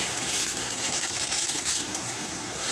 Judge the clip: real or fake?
fake